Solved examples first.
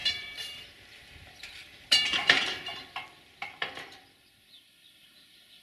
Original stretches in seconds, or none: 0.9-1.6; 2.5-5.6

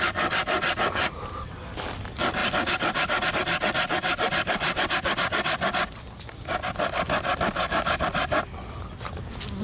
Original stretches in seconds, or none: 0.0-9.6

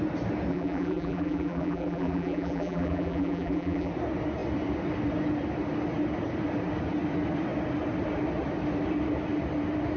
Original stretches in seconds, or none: 0.0-0.5; 3.9-10.0

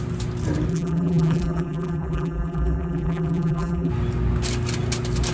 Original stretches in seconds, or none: 0.0-0.7; 3.9-5.3